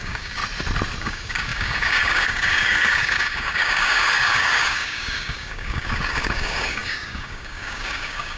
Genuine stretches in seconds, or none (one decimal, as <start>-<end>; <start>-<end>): 0.4-1.0